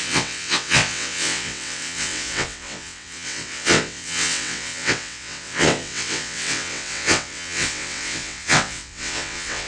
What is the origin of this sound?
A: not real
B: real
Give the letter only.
A